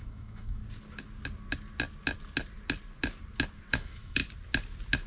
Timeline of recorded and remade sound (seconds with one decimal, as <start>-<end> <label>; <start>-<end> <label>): 0.0-0.6 remade; 0.6-3.7 recorded; 3.7-4.2 remade; 4.2-5.1 recorded

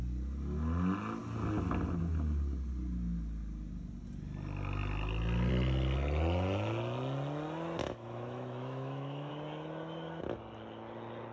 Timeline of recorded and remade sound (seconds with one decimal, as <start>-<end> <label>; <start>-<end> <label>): 0.0-7.8 recorded; 7.8-9.3 remade; 9.3-11.3 recorded

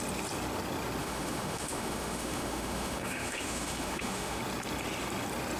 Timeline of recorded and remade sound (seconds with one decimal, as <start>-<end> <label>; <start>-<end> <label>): 0.0-1.0 recorded; 1.0-4.4 remade; 4.4-5.6 recorded

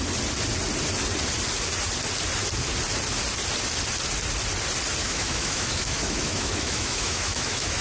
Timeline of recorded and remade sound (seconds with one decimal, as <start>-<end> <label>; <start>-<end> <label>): 0.0-5.0 recorded; 5.0-7.8 remade

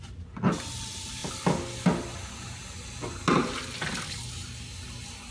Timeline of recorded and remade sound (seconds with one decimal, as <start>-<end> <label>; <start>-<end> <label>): 0.0-5.3 recorded

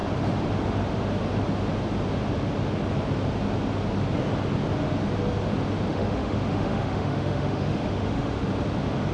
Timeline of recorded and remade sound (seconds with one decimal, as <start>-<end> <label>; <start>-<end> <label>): 0.0-5.9 recorded; 5.9-8.4 remade; 8.4-9.1 recorded

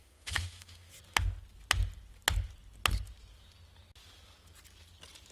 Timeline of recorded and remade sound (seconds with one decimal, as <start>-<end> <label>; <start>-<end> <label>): 0.0-0.9 remade; 0.9-5.3 recorded

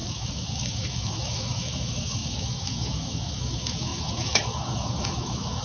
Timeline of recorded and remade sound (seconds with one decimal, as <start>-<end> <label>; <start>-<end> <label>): 0.0-5.6 remade